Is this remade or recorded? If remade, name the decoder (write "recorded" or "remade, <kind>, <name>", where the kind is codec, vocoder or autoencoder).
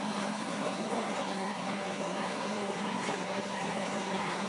remade, codec, SNAC